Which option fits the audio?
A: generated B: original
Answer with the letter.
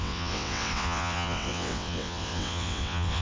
A